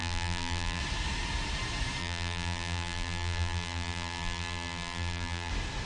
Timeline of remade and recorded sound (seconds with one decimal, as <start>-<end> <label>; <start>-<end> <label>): 0.0-0.8 remade; 0.8-2.0 recorded; 2.0-5.5 remade; 5.5-5.9 recorded